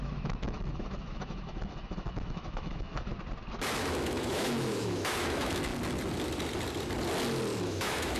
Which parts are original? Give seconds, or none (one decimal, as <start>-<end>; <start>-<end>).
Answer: 3.1-3.8; 5.7-7.6